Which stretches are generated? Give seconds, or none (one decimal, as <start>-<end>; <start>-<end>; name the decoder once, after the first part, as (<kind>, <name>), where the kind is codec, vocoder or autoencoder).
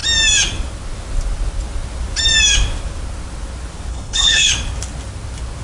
3.9-4.5 (codec, HILCodec)